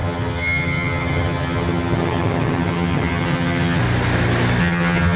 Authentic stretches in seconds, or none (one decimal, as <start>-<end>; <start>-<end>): 3.8-4.6